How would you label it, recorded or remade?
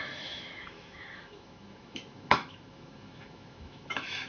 remade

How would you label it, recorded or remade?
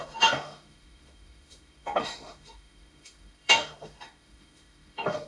remade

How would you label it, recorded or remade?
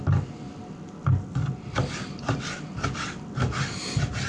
recorded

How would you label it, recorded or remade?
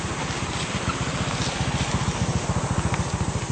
recorded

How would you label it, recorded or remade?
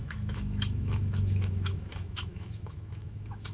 remade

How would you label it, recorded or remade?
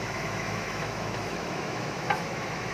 remade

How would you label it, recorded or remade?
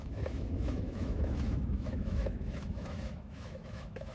remade